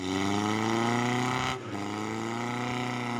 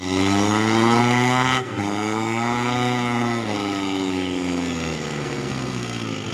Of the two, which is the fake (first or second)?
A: second